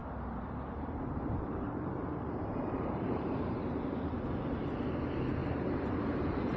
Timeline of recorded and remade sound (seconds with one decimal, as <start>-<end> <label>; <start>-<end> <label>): 0.0-3.7 remade; 3.7-5.4 recorded; 5.4-6.6 remade